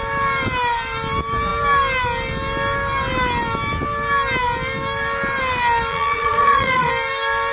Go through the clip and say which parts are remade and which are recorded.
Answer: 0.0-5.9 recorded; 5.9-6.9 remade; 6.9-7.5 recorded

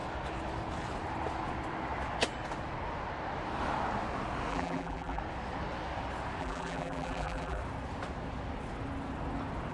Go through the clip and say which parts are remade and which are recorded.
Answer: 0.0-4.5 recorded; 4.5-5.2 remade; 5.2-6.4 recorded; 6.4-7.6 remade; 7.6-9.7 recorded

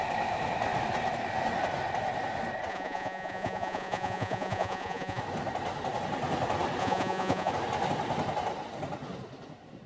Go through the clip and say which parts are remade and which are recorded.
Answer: 0.0-2.7 recorded; 2.7-5.2 remade; 5.2-6.8 recorded; 6.8-7.5 remade; 7.5-9.9 recorded

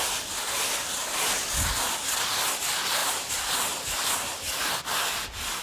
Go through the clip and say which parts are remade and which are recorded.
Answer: 0.0-5.6 recorded